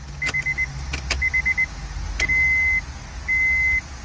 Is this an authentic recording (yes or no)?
yes